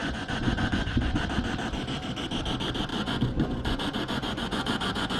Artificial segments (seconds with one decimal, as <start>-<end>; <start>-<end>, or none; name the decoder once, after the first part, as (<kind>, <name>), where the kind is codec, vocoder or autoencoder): 0.0-1.2 (vocoder, Vocos); 2.9-5.2